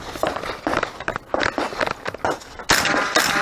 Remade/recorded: recorded